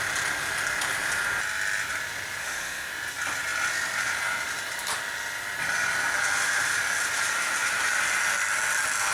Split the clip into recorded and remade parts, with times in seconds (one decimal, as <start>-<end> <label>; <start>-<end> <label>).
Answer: 0.0-2.4 recorded; 2.4-2.9 remade; 2.9-9.1 recorded